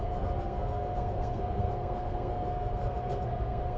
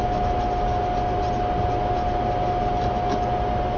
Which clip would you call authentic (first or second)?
second